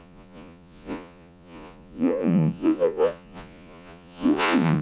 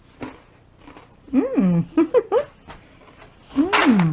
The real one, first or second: second